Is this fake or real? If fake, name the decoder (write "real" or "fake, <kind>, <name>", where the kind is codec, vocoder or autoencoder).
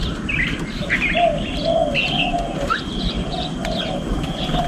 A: real